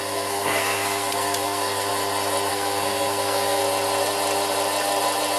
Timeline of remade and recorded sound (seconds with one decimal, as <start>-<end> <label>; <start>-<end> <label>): 0.0-1.9 remade; 1.9-2.5 recorded; 2.5-3.6 remade; 3.6-5.4 recorded